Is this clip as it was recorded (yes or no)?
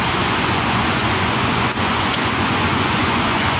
no